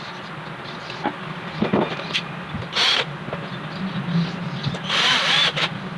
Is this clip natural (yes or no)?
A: yes